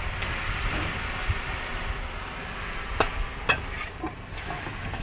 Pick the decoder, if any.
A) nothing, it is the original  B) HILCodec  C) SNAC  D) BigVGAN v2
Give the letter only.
A